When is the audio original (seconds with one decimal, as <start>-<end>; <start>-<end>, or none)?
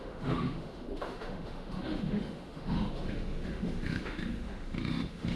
none